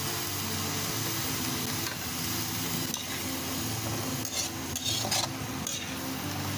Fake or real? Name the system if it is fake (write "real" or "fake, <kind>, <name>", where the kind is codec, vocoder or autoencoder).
real